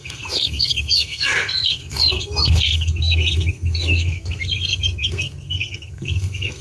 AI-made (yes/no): yes